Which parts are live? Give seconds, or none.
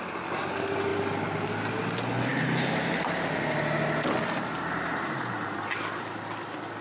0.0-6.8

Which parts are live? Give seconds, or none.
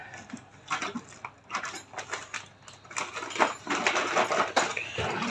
0.0-5.3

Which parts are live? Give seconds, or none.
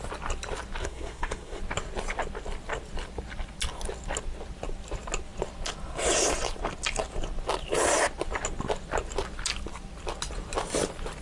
0.0-0.8; 1.6-11.2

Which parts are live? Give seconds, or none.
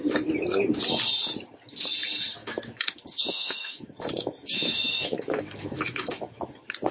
0.0-2.4; 6.5-6.9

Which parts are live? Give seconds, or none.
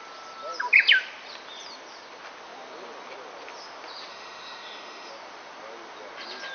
0.0-4.1; 5.1-6.5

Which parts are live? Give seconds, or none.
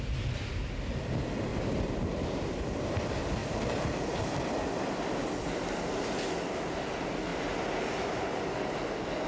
0.0-1.5; 2.0-3.4; 6.0-9.3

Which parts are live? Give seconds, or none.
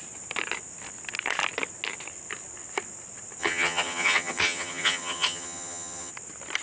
0.0-3.4; 6.1-6.6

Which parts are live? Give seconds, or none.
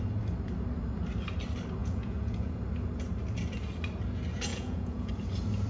0.0-1.8; 2.6-4.5; 5.1-5.7